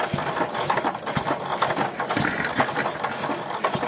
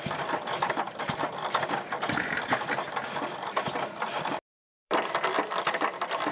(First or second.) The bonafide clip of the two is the first